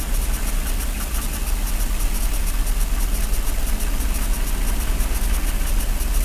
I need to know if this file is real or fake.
real